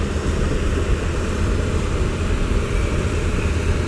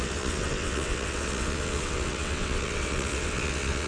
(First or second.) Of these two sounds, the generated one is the second